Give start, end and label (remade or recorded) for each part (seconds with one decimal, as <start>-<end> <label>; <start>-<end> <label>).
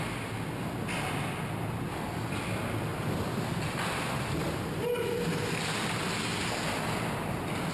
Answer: 0.0-2.9 recorded; 2.9-5.9 remade; 5.9-7.7 recorded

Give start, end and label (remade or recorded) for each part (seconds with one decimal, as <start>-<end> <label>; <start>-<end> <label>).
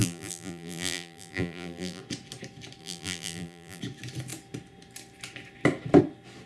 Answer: 0.0-2.0 remade; 2.0-2.8 recorded; 2.8-3.8 remade; 3.8-6.5 recorded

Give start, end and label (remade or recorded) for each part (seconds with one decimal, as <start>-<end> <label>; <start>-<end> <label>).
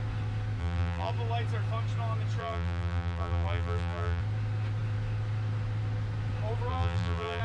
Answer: 0.0-0.6 recorded; 0.6-1.1 remade; 1.1-2.4 recorded; 2.4-4.2 remade; 4.2-6.7 recorded; 6.7-7.4 remade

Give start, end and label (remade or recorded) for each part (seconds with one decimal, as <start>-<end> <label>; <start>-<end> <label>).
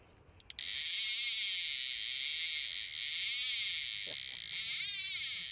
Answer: 0.0-5.5 recorded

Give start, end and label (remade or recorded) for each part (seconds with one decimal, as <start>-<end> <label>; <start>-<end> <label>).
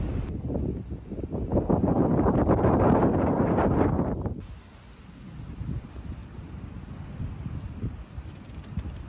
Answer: 0.0-1.5 recorded; 1.5-4.1 remade; 4.1-6.2 recorded; 6.2-6.9 remade; 6.9-9.1 recorded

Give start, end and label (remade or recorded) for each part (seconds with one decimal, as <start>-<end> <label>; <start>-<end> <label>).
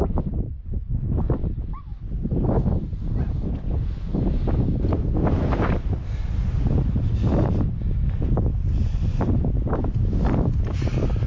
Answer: 0.0-4.1 remade; 4.1-7.3 recorded; 7.3-11.3 remade